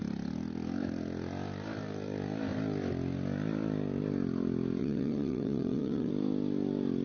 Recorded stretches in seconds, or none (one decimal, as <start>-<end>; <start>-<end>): 0.0-4.8; 6.1-7.0